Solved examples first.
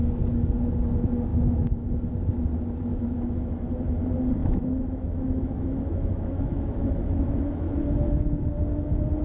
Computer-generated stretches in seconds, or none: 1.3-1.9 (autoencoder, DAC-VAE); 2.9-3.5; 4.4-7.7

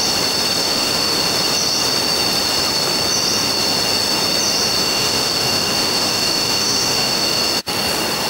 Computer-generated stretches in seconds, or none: 0.6-1.2 (autoencoder, DAC-VAE); 4.8-7.4

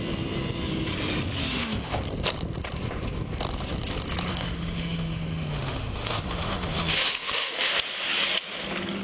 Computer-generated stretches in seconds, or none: 1.4-2.0 (autoencoder, DAC-VAE); 4.3-7.7

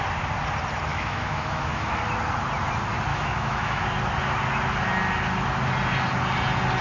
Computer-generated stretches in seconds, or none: 0.9-1.9 (autoencoder, DAC-VAE); 3.1-3.8

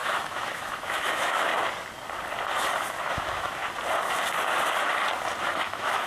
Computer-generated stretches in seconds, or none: 0.0-1.5 (autoencoder, DAC-VAE); 3.0-3.6; 5.4-6.1

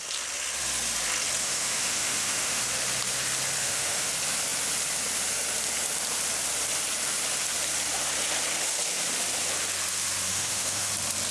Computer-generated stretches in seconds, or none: 1.4-2.6 (autoencoder, DAC-VAE); 3.6-4.1; 10.3-10.9

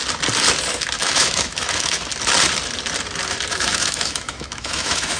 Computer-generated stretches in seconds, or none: 1.0-2.1 (autoencoder, DAC-VAE); 3.5-5.2